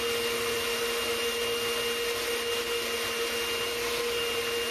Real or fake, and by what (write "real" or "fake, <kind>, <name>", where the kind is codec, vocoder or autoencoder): real